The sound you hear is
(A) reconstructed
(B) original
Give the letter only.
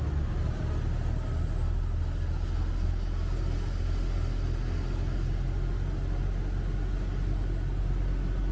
B